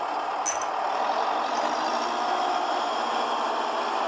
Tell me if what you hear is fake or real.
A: real